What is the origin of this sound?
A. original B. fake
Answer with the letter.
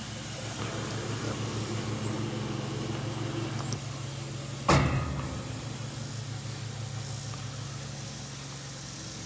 A